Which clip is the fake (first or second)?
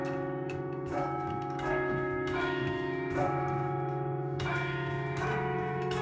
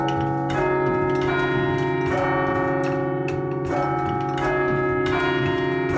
first